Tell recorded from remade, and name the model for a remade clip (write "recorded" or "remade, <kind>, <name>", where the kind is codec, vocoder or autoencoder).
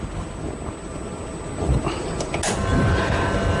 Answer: recorded